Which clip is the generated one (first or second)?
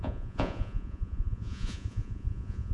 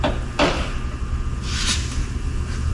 first